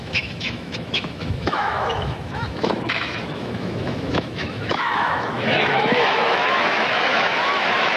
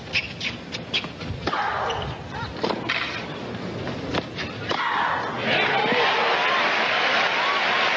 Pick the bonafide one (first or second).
second